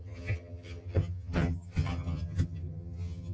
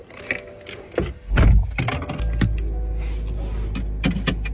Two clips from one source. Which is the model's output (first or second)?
first